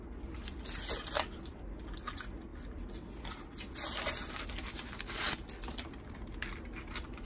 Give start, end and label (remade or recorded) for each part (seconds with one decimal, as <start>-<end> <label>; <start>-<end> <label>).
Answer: 0.0-7.2 recorded